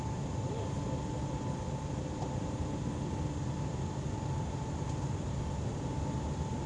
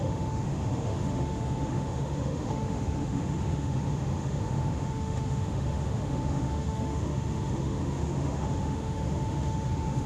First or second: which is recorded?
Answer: first